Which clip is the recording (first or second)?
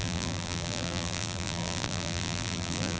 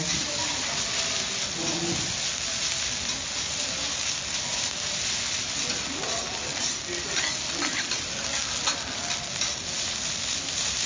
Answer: second